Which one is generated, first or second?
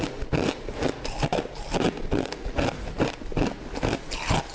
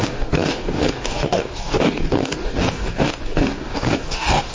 second